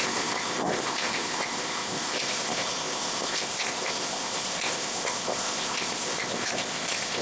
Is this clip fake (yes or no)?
yes